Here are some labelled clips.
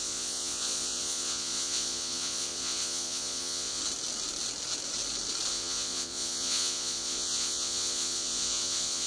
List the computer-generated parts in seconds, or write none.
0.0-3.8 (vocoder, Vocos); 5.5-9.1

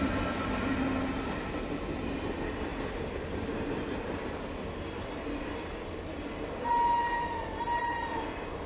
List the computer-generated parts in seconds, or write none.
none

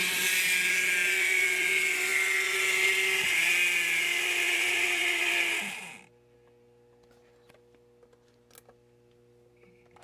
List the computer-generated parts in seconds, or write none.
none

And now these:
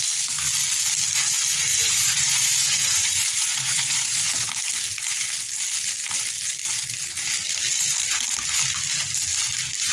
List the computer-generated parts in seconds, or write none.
1.7-4.5 (vocoder, Vocos)

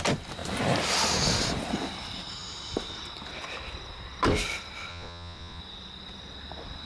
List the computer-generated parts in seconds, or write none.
4.9-5.6 (vocoder, Vocos)